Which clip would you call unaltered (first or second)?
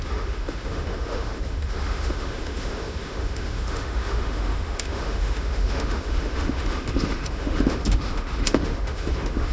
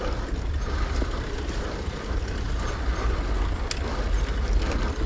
second